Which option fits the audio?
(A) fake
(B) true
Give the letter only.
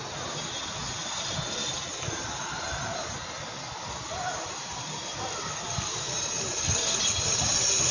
B